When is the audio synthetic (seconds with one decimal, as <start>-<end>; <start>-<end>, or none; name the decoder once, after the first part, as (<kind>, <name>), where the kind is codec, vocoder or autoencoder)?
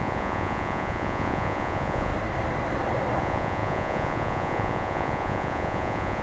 0.0-2.1 (vocoder, Vocos); 3.2-6.2